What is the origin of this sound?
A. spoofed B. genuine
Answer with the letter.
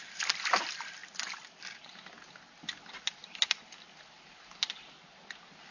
B